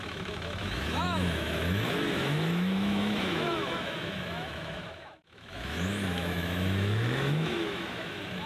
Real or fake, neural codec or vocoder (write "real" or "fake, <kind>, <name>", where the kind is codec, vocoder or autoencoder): fake, autoencoder, DAC-VAE